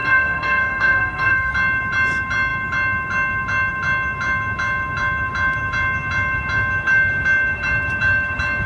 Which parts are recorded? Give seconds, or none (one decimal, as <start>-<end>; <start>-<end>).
1.5-8.7